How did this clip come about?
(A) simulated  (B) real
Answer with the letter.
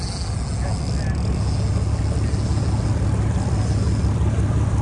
B